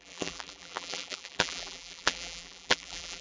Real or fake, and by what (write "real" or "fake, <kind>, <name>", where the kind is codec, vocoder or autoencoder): fake, vocoder, BigVGAN v2